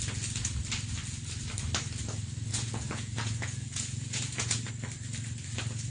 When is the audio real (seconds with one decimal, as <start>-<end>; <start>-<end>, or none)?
0.0-2.5; 4.7-5.9